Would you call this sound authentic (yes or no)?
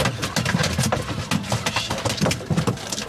yes